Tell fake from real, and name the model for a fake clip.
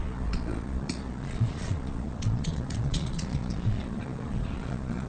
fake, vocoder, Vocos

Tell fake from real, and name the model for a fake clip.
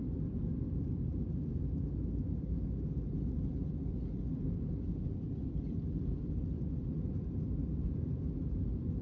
real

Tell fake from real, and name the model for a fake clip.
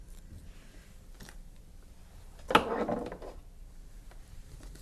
real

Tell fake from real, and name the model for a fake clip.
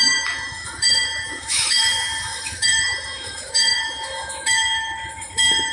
fake, autoencoder, DAC-VAE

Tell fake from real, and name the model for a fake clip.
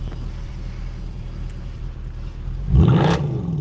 fake, vocoder, BigVGAN v2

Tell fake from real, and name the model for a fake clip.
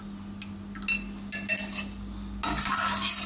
real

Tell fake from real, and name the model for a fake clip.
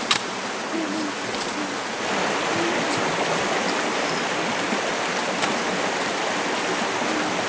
real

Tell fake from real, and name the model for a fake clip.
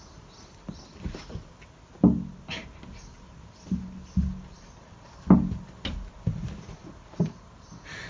real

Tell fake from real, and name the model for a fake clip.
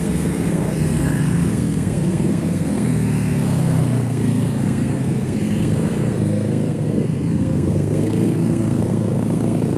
fake, codec, SNAC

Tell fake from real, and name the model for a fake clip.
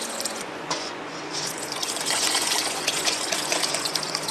fake, vocoder, Vocos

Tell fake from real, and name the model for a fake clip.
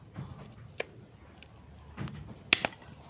real